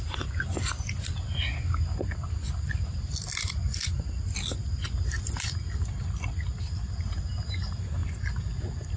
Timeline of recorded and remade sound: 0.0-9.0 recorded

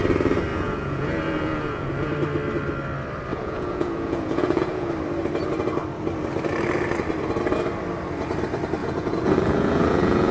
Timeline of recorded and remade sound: 0.0-0.5 recorded; 0.5-2.1 remade; 2.1-3.3 recorded; 3.3-4.9 remade; 4.9-8.8 recorded; 8.8-10.3 remade

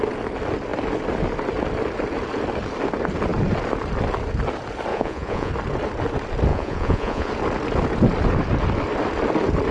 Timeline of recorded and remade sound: 0.0-4.9 recorded; 4.9-5.5 remade; 5.5-6.5 recorded; 6.5-7.3 remade; 7.3-9.7 recorded